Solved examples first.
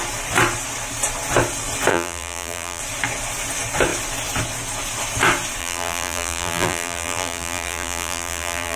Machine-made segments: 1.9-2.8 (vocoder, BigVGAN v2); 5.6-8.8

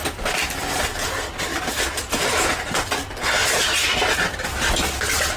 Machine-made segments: 1.5-2.6 (vocoder, BigVGAN v2); 3.4-5.4

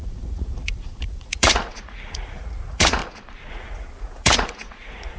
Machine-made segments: 0.0-3.0 (vocoder, Vocos); 3.5-5.2

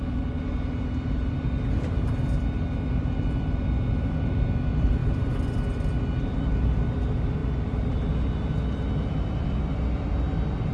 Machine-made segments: none

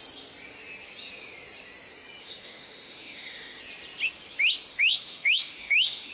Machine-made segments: 2.2-3.6 (autoencoder, DAC-VAE); 4.7-6.1